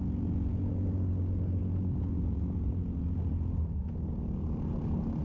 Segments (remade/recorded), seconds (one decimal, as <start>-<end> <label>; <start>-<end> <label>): 0.0-5.2 recorded